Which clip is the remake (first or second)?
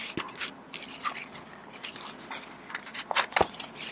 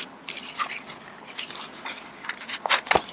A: second